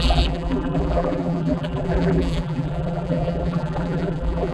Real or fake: fake